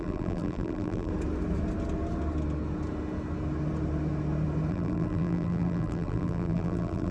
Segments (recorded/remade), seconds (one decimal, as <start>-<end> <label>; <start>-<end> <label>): 0.0-1.1 remade; 1.1-4.7 recorded; 4.7-7.1 remade